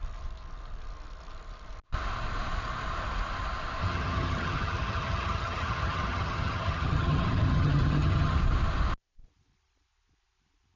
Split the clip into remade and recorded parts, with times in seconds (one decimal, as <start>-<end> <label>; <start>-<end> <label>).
0.0-3.8 recorded; 3.8-8.4 remade; 8.4-10.8 recorded

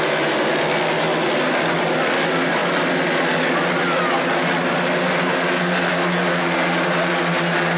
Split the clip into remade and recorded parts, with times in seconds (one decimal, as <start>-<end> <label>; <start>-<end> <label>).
0.0-7.8 recorded

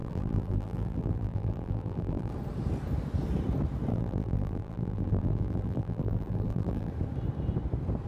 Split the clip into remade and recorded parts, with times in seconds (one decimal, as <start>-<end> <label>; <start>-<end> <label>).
0.0-2.3 remade; 2.3-3.9 recorded; 3.9-6.9 remade; 6.9-8.1 recorded

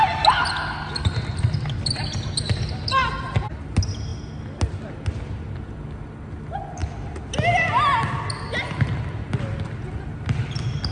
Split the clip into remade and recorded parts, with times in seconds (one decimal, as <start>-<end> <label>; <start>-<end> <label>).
0.0-10.9 recorded

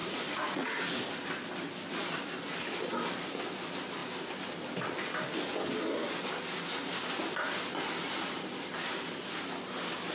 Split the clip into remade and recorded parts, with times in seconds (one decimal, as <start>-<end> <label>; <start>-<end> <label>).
0.0-0.8 remade; 0.8-10.1 recorded